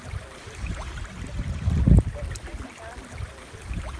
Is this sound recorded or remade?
remade